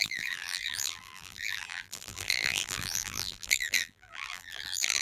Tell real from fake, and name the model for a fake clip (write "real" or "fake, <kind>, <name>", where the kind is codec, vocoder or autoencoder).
fake, vocoder, BigVGAN v2